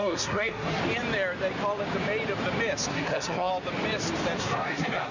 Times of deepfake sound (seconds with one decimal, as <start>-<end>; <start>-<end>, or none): 0.0-0.8; 2.9-3.5; 4.4-5.1